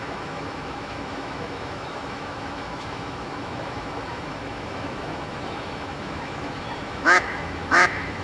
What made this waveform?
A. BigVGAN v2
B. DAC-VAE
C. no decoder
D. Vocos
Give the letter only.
B